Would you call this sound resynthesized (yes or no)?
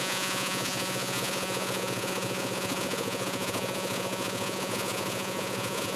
yes